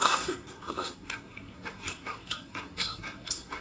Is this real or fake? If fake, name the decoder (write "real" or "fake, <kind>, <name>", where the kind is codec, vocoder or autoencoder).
fake, codec, SNAC